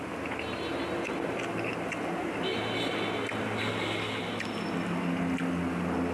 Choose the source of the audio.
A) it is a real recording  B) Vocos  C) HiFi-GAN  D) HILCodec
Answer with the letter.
A